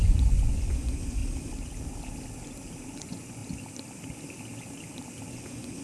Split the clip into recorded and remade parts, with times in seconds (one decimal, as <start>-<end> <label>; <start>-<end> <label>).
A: 0.0-1.2 remade; 1.2-2.8 recorded; 2.8-3.4 remade; 3.4-5.3 recorded; 5.3-5.8 remade